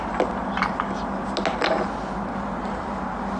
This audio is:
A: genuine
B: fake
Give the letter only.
A